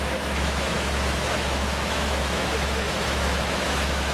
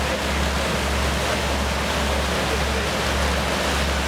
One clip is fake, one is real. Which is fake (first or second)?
first